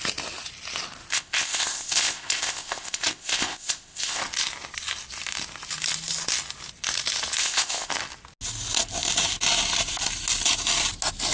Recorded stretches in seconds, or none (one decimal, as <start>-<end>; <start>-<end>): 0.0-1.1; 4.2-7.4; 7.9-11.3